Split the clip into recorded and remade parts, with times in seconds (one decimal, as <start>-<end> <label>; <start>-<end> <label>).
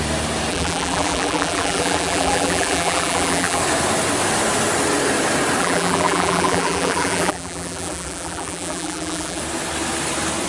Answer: 0.0-0.5 recorded; 0.5-3.6 remade; 3.6-5.6 recorded; 5.6-9.4 remade; 9.4-10.5 recorded